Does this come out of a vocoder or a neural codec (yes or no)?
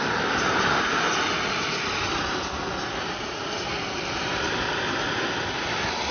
no